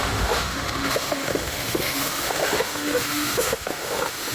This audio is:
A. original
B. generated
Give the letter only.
B